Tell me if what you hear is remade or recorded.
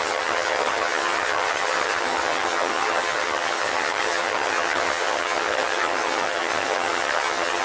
remade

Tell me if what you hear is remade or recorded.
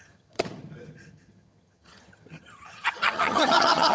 remade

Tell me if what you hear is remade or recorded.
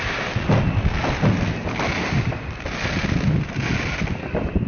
recorded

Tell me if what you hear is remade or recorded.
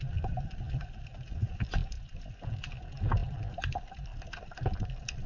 recorded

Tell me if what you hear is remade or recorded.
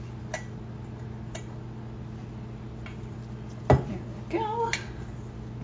recorded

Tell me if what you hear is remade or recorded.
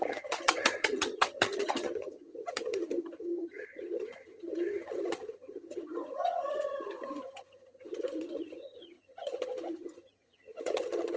remade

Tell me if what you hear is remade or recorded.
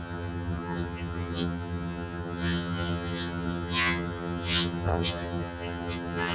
remade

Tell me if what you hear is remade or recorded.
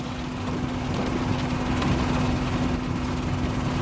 recorded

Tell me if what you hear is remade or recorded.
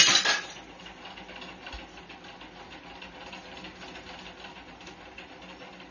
recorded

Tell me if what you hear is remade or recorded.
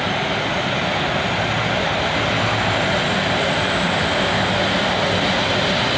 recorded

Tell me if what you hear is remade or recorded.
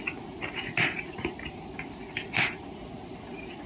recorded